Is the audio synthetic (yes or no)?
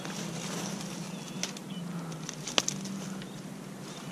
no